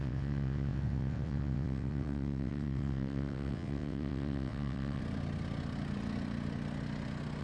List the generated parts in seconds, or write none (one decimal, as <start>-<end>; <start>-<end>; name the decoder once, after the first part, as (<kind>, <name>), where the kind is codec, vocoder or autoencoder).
0.0-5.0 (vocoder, WaveNeXt)

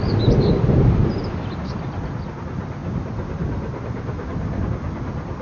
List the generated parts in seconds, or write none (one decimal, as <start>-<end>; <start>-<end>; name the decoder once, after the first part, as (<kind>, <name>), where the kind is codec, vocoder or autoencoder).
none

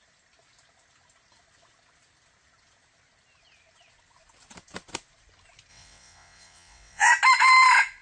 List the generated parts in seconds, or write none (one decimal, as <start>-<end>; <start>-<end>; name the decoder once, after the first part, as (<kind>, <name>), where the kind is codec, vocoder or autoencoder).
5.7-7.1 (vocoder, WaveNeXt)